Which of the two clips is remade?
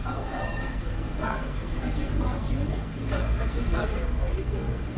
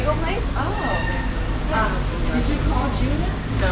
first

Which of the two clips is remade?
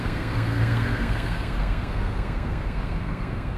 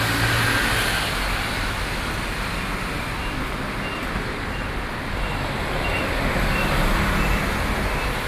first